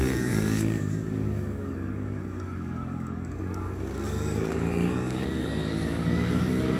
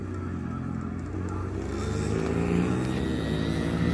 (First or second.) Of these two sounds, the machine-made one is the first